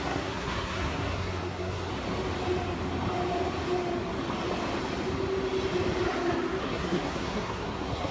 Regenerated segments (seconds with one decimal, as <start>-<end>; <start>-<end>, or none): 0.0-1.9; 6.6-8.1